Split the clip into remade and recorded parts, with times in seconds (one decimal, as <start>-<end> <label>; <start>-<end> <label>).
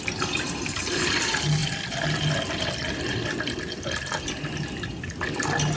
0.0-5.8 recorded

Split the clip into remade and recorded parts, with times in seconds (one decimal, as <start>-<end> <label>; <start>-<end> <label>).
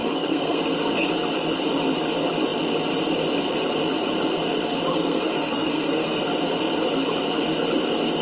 0.0-0.6 remade; 0.6-4.9 recorded; 4.9-6.2 remade; 6.2-8.2 recorded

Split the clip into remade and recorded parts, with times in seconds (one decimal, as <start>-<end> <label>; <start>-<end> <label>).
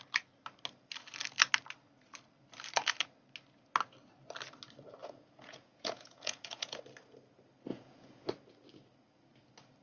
0.0-5.0 recorded; 5.0-6.8 remade; 6.8-7.7 recorded; 7.7-8.3 remade; 8.3-9.8 recorded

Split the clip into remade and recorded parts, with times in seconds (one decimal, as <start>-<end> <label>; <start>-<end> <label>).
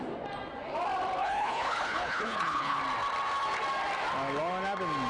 0.0-1.2 recorded; 1.2-2.8 remade; 2.8-5.1 recorded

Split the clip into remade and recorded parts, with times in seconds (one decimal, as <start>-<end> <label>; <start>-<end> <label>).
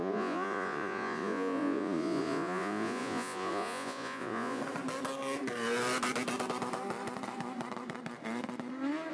0.0-4.6 remade; 4.6-9.1 recorded